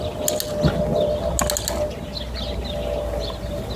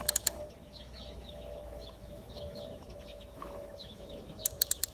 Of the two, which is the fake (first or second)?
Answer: second